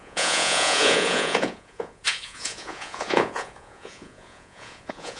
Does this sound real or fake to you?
fake